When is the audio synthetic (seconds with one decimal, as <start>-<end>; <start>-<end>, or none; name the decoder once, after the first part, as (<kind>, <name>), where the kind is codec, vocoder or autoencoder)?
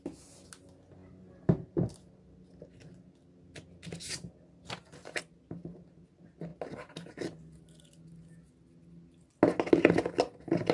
none